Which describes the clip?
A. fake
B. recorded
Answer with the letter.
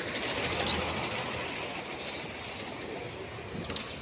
B